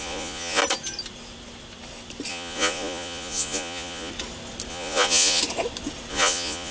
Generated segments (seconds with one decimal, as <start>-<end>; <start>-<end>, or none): 0.0-0.6; 2.3-4.1; 4.7-5.4; 6.1-6.7

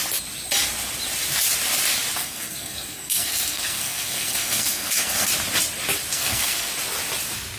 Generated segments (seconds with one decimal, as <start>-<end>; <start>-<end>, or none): 2.2-5.3; 6.1-6.7

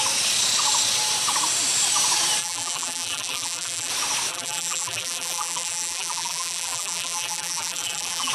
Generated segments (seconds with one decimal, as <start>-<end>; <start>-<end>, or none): 2.4-3.9; 4.3-8.3

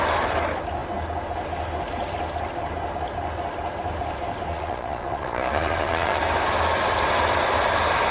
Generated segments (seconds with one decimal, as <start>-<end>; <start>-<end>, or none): 4.5-6.2